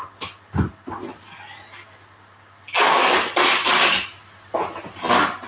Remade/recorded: recorded